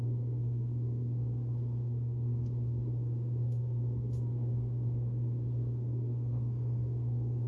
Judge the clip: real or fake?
fake